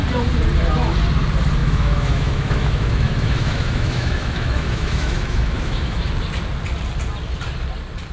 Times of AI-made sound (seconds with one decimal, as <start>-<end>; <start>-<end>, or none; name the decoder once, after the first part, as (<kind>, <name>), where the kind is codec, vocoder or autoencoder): 1.6-6.1 (autoencoder, DAC-VAE)